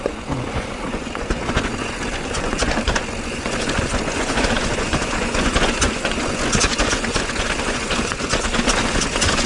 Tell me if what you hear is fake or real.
fake